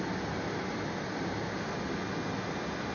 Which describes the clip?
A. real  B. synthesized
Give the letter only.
A